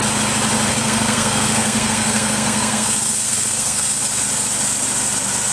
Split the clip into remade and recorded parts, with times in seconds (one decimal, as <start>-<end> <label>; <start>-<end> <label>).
0.0-0.7 recorded; 0.7-4.0 remade; 4.0-5.5 recorded